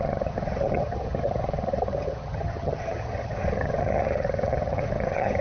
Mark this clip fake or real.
fake